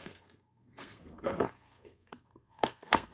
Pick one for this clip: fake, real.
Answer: fake